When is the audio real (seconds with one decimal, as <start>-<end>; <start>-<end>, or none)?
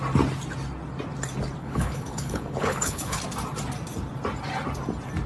0.0-1.6; 3.2-5.3